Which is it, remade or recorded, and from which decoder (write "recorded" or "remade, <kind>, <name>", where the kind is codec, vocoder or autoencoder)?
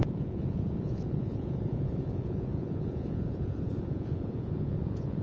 remade, vocoder, Vocos